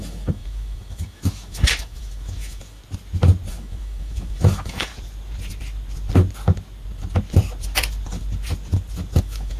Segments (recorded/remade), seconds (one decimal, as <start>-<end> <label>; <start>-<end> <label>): 0.0-2.8 remade; 2.8-3.5 recorded; 3.5-4.9 remade; 4.9-9.2 recorded; 9.2-9.6 remade